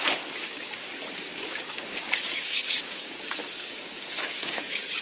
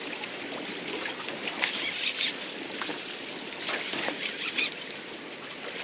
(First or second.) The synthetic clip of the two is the first